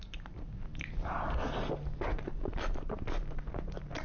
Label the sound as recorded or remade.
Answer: recorded